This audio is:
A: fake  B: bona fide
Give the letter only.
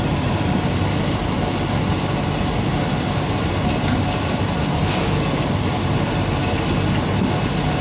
B